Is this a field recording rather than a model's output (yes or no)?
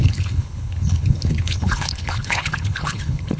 no